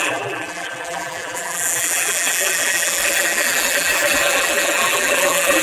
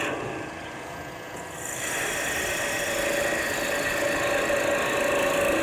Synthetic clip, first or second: first